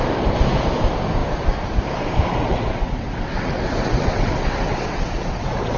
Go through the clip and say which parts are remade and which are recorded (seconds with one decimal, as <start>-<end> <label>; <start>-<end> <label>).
0.0-2.3 recorded; 2.3-5.8 remade